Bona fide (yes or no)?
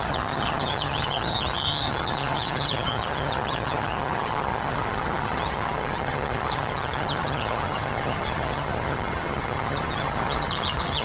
no